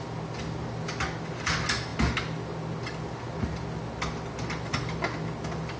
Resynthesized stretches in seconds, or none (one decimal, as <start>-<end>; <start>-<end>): none